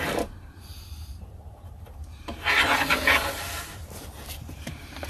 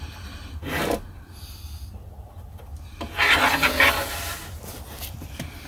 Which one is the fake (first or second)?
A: first